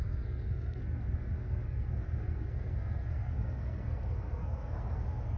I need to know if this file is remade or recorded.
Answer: remade